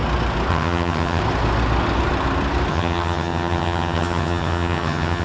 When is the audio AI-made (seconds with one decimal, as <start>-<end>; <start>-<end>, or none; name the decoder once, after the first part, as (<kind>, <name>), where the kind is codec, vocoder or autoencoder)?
0.5-1.2 (vocoder, HiFi-GAN); 2.7-5.2